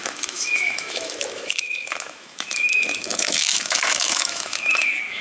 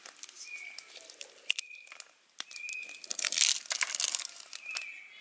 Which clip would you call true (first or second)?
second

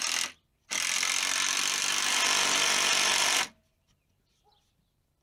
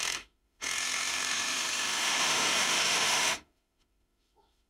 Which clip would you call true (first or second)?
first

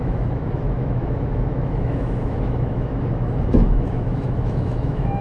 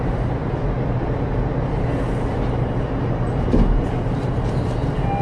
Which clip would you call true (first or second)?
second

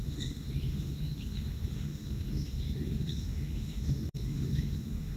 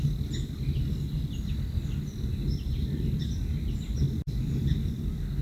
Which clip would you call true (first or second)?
second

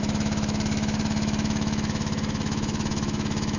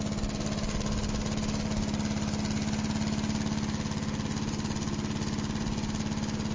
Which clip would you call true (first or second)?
second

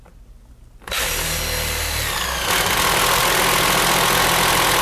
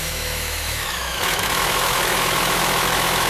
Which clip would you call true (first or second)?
first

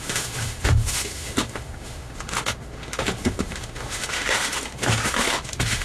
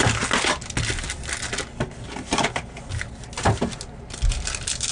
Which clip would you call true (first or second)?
second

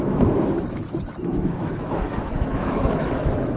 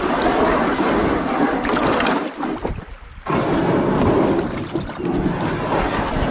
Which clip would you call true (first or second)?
second